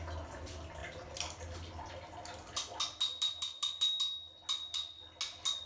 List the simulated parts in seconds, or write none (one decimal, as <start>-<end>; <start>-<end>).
none